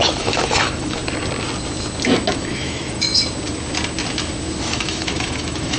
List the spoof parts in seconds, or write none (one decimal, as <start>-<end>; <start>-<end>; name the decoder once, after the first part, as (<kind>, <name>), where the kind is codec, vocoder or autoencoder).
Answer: 0.0-1.0 (autoencoder, DAC-VAE); 2.3-3.1; 4.6-5.8